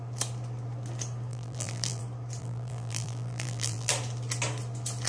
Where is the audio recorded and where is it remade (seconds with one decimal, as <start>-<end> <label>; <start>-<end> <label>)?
0.0-1.3 recorded; 1.3-2.0 remade; 2.0-2.4 recorded; 2.4-3.9 remade; 3.9-5.1 recorded